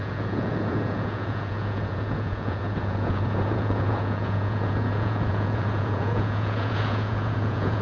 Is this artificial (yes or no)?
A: yes